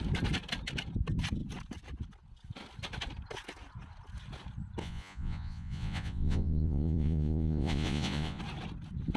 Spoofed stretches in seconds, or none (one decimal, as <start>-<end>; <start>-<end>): 4.8-8.4